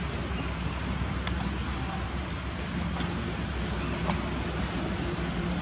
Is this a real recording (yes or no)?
yes